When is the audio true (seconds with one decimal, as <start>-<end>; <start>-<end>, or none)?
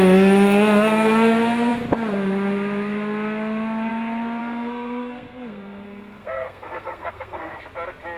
0.0-4.4; 7.6-8.2